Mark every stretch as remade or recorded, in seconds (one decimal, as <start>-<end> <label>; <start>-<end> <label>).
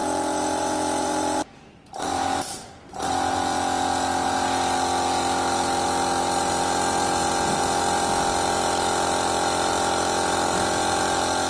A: 0.0-2.9 remade; 2.9-11.5 recorded